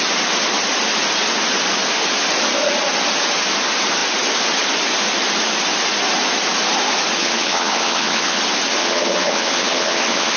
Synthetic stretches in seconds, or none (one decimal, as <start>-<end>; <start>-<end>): 7.2-8.4; 8.8-10.4